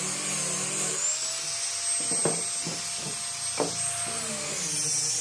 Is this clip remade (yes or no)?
no